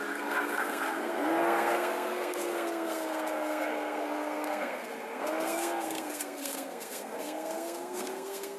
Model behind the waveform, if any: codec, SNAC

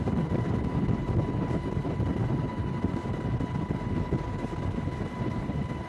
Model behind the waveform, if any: none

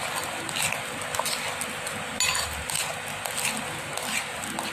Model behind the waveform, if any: none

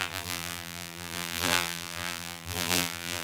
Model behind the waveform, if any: vocoder, BigVGAN v2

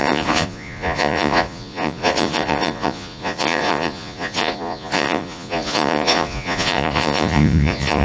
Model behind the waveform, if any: vocoder, Vocos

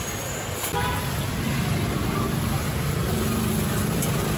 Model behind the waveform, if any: none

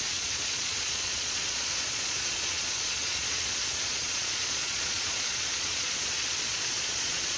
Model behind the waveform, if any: vocoder, Vocos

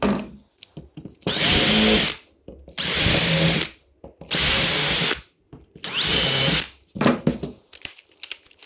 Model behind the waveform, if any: none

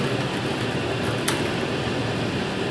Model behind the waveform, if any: none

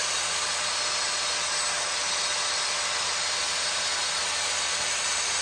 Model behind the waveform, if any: none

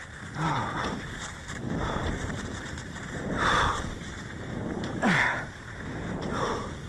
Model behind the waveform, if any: vocoder, BigVGAN v2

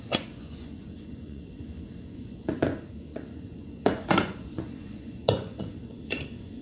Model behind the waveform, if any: vocoder, Vocos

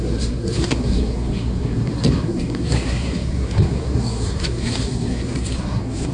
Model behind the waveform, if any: codec, SNAC